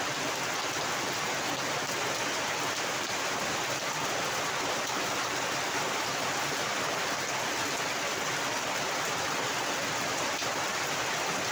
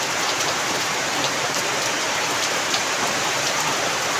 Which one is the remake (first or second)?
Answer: second